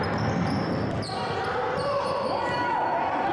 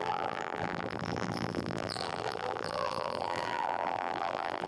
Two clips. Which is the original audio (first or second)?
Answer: first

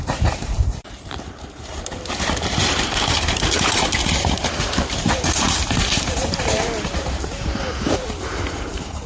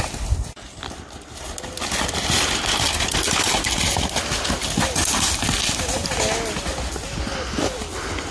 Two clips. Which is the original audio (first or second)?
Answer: second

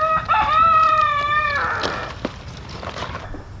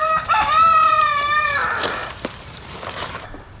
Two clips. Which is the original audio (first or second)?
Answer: first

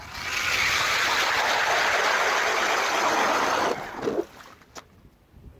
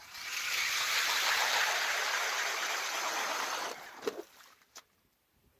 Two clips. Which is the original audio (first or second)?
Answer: first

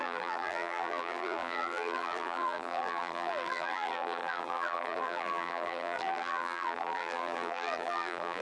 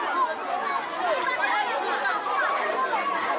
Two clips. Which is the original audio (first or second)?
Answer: second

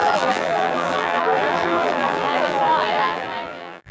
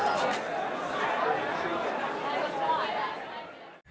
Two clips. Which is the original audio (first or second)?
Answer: second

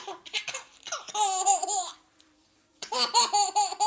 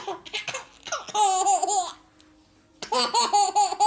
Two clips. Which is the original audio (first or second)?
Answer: second